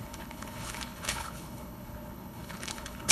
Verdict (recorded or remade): remade